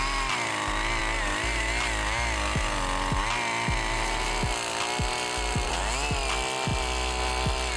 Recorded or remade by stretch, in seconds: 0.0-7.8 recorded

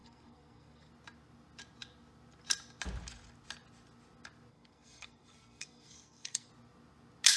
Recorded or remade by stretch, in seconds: 0.0-0.9 remade; 0.9-4.5 recorded; 4.5-6.5 remade; 6.5-7.4 recorded